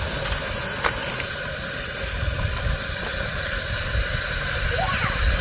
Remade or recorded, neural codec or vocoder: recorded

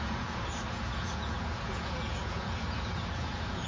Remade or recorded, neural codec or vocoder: remade, vocoder, Vocos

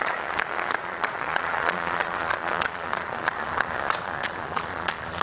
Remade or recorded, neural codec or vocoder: remade, vocoder, Vocos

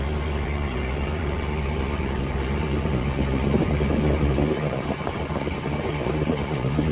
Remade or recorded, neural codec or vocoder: remade, vocoder, Vocos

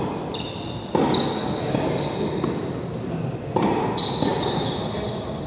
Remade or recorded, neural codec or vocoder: recorded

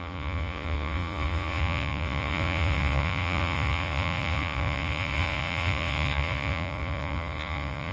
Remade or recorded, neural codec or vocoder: remade, vocoder, Vocos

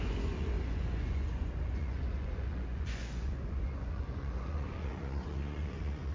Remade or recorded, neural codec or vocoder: remade, vocoder, Vocos